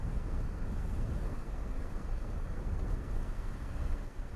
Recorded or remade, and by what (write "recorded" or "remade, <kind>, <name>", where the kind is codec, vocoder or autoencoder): remade, codec, SNAC